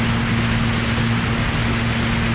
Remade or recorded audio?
recorded